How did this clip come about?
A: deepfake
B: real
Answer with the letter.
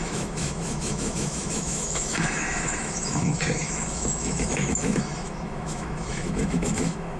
A